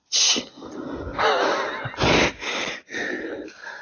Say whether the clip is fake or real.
real